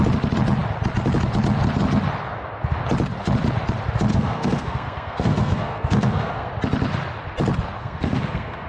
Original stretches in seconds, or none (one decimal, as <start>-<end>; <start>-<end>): 0.0-4.1; 6.5-7.8